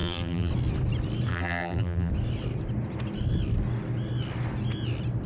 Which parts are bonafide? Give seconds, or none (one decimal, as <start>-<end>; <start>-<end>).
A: 0.5-1.3; 2.1-5.3